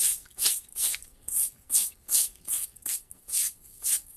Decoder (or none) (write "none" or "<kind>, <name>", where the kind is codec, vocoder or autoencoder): codec, SNAC